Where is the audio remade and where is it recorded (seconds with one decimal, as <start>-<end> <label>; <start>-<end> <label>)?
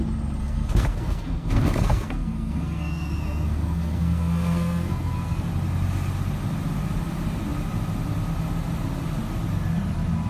0.0-0.4 recorded; 0.4-5.5 remade; 5.5-10.3 recorded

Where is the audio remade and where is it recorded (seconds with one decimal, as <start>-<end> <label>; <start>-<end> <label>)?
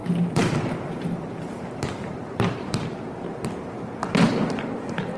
0.0-3.1 remade; 3.1-5.2 recorded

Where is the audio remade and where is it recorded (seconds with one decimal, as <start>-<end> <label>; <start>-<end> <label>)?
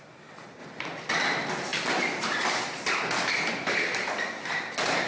0.0-5.1 recorded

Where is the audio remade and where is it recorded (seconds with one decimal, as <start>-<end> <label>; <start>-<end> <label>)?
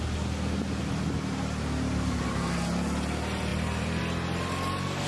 0.0-3.5 recorded; 3.5-4.0 remade; 4.0-5.1 recorded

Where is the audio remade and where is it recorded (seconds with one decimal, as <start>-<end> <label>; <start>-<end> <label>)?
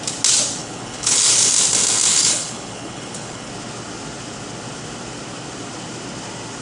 0.0-0.6 recorded; 0.6-1.5 remade; 1.5-2.1 recorded; 2.1-3.5 remade; 3.5-6.6 recorded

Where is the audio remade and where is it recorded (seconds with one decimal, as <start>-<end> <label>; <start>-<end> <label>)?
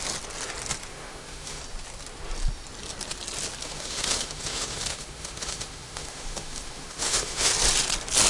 0.0-0.9 recorded; 0.9-1.6 remade; 1.6-3.6 recorded; 3.6-7.5 remade; 7.5-8.3 recorded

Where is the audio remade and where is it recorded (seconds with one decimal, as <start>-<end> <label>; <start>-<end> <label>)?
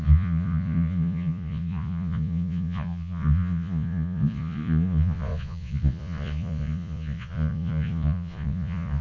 0.0-9.0 remade